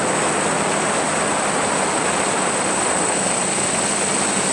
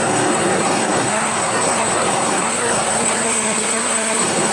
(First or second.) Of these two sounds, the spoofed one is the second